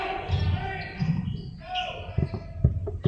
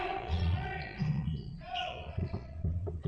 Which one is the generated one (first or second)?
second